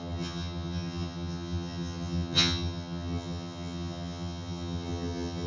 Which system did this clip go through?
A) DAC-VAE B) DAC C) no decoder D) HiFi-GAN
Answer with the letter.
D